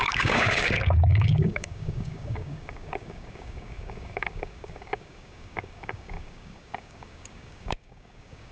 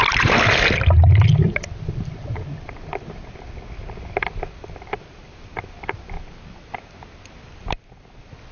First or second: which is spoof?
first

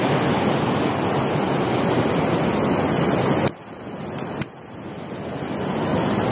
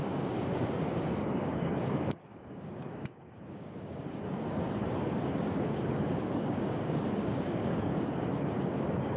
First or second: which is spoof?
second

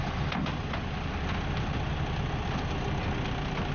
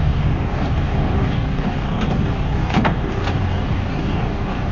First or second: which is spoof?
second